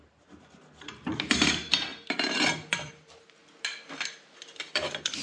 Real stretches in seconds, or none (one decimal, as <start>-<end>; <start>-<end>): 3.4-4.6